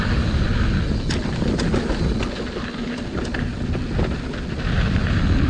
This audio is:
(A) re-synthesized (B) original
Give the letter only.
B